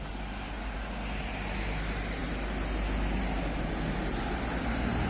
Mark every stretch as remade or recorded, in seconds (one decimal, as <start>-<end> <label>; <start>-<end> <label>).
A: 0.0-5.1 recorded